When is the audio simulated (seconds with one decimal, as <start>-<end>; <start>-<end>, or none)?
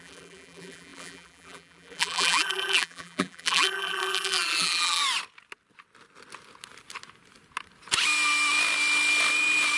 0.0-5.0